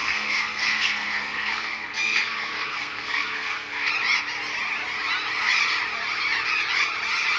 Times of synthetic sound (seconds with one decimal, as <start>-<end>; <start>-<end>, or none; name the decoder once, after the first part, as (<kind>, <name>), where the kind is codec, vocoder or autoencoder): 0.0-3.9 (codec, SNAC)